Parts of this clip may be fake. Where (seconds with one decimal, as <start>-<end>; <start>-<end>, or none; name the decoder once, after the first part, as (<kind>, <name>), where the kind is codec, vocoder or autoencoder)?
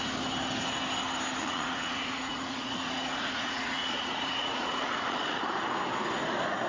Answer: 1.4-5.4 (vocoder, Vocos)